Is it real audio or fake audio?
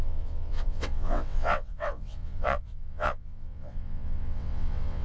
fake